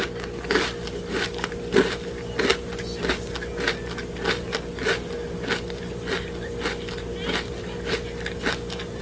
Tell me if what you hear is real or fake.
real